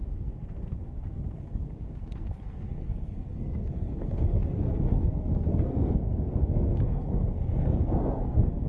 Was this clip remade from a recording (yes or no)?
yes